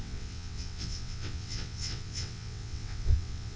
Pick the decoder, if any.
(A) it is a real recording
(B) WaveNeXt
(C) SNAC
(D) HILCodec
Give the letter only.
B